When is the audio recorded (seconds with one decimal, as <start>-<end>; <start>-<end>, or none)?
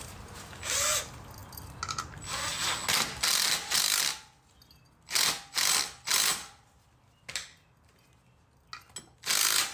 0.0-9.7